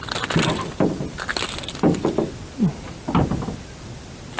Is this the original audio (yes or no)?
yes